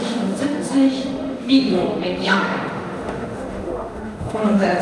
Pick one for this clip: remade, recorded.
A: remade